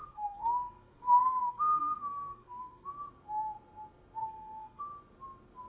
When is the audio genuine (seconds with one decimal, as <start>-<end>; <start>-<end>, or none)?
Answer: 2.9-4.2; 4.8-5.7